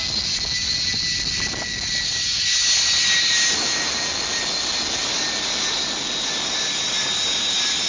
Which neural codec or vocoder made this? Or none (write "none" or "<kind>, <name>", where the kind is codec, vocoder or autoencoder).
none